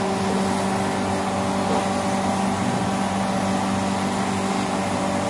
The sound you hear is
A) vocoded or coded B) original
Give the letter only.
B